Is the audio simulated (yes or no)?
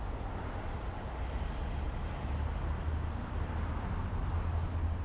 no